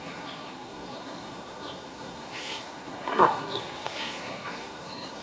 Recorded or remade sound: remade